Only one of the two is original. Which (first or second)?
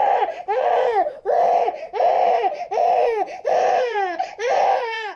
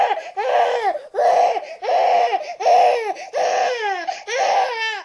second